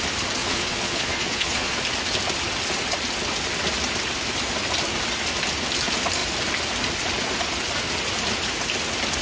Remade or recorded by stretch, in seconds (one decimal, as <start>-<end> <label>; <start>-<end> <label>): 0.0-0.4 recorded; 0.4-1.8 remade; 1.8-9.2 recorded